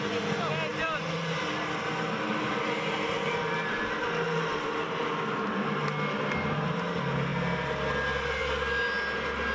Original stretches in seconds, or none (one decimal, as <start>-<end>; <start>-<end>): 0.0-0.7; 5.0-9.5